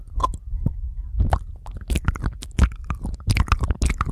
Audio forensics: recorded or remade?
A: recorded